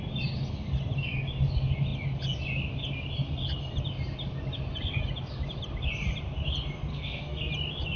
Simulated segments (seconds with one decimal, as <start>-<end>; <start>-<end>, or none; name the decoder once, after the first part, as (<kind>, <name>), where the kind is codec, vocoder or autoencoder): 6.9-7.5 (codec, SNAC)